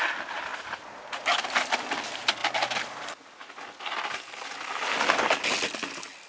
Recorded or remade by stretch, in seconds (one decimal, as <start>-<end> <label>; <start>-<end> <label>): 0.0-6.3 recorded

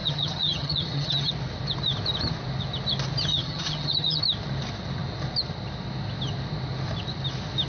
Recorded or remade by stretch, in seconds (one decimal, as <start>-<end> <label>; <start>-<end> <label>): 0.0-1.3 remade; 1.3-3.3 recorded; 3.3-4.2 remade; 4.2-7.7 recorded